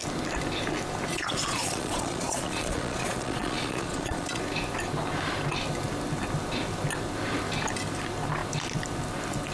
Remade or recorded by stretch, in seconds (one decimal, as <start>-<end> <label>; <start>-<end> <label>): 0.0-1.1 recorded; 1.1-4.4 remade; 4.4-9.5 recorded